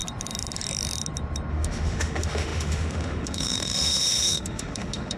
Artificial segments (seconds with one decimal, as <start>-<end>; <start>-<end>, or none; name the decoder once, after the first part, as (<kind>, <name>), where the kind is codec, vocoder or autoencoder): 1.5-5.2 (autoencoder, DAC-VAE)